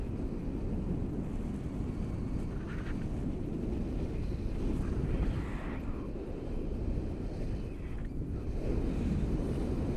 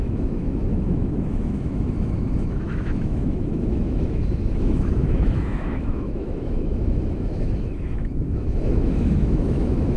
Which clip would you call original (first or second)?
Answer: first